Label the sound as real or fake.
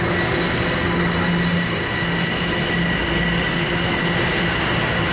real